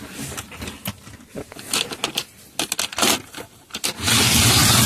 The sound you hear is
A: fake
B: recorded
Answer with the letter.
B